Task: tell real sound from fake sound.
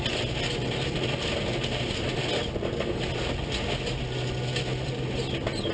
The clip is real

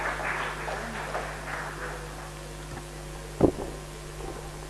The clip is real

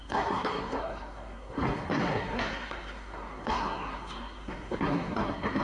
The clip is fake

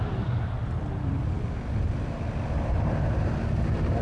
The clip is real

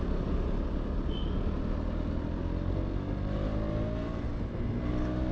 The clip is real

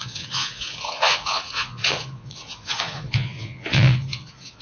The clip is fake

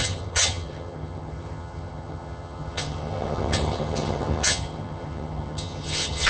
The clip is fake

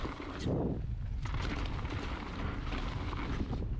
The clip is real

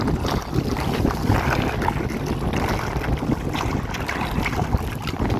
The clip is real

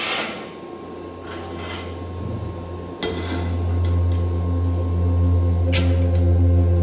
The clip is real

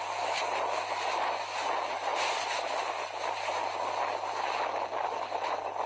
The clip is real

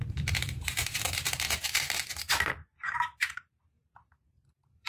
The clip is fake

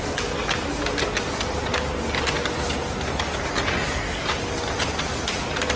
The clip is real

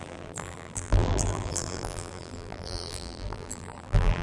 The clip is fake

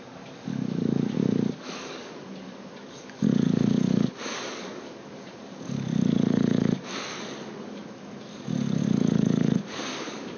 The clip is fake